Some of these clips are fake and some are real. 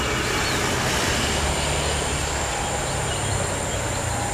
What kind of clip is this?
real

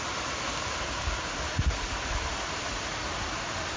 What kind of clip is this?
real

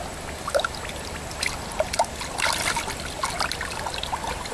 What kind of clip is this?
real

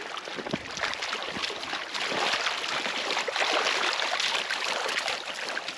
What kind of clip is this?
real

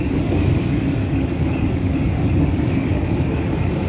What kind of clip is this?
fake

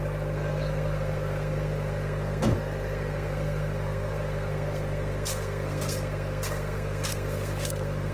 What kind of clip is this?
fake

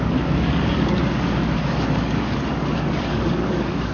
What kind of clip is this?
fake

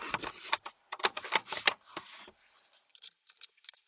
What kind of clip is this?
fake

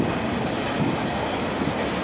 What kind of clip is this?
real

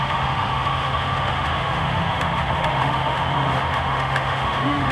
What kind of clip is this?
fake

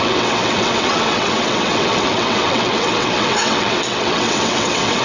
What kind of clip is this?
fake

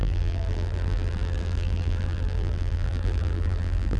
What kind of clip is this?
fake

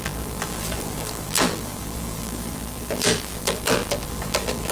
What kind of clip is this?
fake